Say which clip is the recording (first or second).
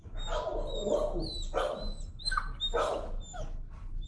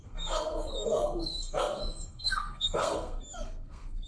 first